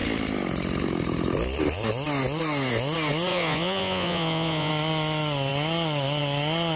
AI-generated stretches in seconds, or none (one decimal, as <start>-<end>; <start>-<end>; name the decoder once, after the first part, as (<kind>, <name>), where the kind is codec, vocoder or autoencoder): 3.3-4.7 (vocoder, Vocos)